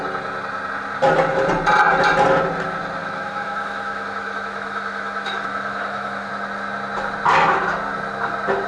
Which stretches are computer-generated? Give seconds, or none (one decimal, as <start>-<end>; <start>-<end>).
3.0-6.3